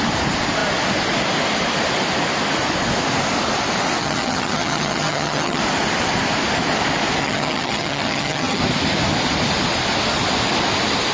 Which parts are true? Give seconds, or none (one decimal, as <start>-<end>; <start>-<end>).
0.0-4.0; 5.6-7.2; 8.6-11.1